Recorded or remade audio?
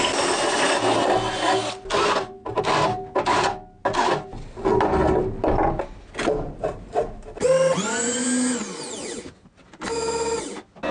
recorded